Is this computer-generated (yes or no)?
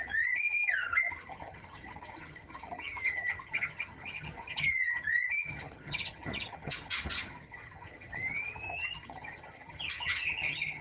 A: yes